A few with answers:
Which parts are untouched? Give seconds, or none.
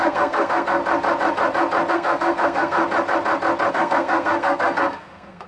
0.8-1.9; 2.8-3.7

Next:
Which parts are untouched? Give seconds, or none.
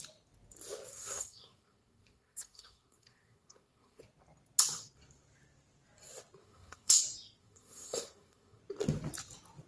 0.0-0.9; 4.0-6.4; 7.0-7.4; 8.6-9.7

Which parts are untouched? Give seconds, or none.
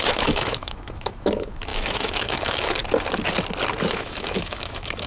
2.8-3.9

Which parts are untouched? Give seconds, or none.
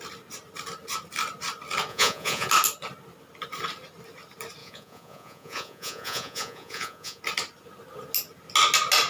0.0-1.9; 2.5-4.6; 7.2-9.1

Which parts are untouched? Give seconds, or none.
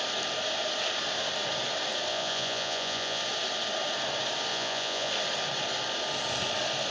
0.0-2.1; 3.2-4.5; 5.1-6.9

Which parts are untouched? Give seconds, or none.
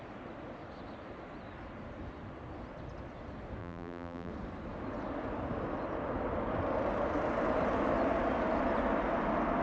0.0-3.6; 4.3-9.6